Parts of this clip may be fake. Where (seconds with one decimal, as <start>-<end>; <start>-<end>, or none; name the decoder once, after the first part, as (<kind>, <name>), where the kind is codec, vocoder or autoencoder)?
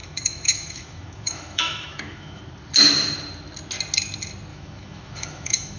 0.0-2.4 (autoencoder, DAC-VAE); 4.5-5.8